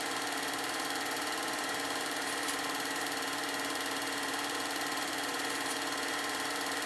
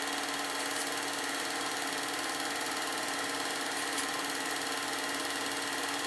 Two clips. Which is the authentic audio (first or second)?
second